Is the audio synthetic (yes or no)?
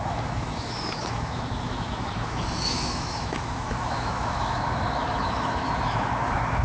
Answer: yes